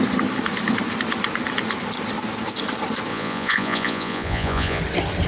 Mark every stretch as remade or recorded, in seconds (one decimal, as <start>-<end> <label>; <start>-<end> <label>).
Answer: 0.0-3.1 recorded; 3.1-4.8 remade; 4.8-5.3 recorded